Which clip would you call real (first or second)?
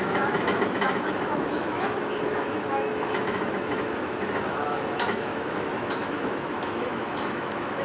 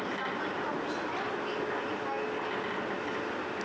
second